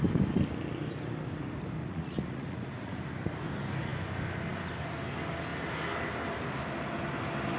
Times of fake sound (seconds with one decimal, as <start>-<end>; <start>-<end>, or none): 1.8-3.0